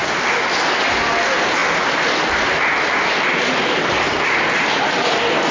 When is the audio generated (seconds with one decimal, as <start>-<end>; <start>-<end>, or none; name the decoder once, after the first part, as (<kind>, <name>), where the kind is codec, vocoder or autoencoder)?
none